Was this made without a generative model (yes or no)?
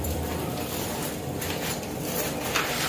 no